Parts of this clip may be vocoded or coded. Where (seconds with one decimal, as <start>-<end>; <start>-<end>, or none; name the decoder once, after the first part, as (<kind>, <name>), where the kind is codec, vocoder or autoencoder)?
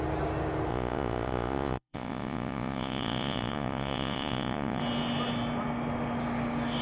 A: 0.7-4.8 (vocoder, Vocos)